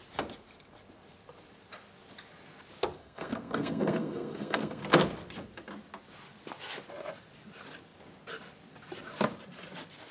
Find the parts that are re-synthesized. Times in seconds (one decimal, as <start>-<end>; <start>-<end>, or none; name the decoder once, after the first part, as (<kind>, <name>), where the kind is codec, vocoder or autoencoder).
3.0-4.8 (codec, SNAC)